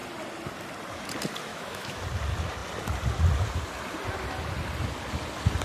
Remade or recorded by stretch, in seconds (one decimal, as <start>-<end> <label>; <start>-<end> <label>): 0.0-1.5 recorded; 1.5-2.0 remade; 2.0-5.6 recorded